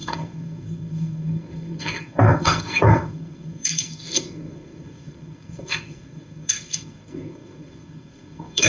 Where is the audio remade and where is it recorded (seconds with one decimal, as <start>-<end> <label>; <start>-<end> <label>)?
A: 0.0-8.7 remade